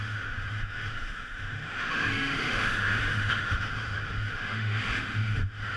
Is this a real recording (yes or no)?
no